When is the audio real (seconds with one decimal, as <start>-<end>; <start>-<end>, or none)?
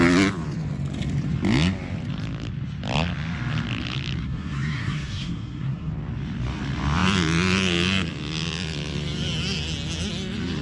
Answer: 0.0-4.2; 5.9-10.6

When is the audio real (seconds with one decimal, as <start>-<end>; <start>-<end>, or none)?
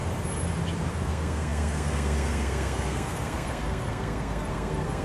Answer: 0.0-0.9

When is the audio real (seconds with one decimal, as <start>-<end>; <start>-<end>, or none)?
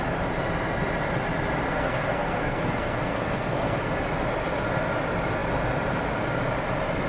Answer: 0.0-1.7; 3.9-7.1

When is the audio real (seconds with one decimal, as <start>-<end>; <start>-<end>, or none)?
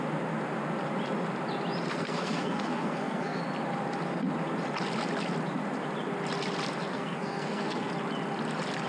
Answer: 0.0-1.9; 3.4-6.9; 7.9-8.9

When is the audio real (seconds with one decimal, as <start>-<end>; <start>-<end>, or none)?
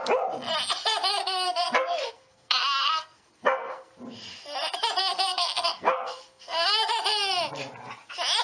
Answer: 0.0-1.2; 3.9-5.0; 6.9-8.4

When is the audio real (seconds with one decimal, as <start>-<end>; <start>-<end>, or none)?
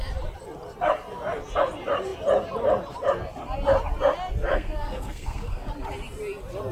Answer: 0.0-4.5; 5.7-6.7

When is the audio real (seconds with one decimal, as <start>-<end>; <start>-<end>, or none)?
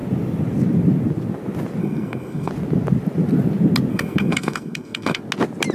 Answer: 0.0-1.8; 2.5-3.9; 5.2-5.7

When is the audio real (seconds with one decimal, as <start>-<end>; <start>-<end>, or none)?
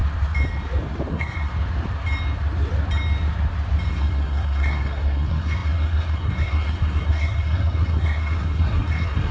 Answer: 0.0-1.1; 1.5-3.9